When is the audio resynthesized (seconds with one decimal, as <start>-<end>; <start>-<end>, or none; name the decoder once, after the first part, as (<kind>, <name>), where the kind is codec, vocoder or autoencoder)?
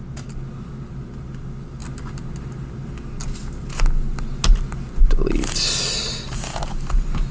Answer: none